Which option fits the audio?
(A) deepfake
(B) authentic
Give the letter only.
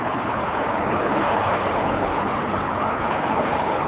A